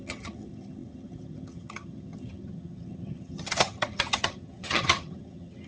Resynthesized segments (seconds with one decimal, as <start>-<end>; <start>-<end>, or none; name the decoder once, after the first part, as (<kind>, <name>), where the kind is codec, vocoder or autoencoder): 0.0-5.7 (vocoder, HiFi-GAN)